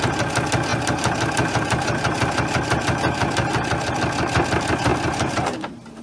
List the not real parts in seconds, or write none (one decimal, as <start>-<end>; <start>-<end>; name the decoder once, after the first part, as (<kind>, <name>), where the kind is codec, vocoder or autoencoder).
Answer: 0.7-3.9 (vocoder, BigVGAN v2); 4.9-6.0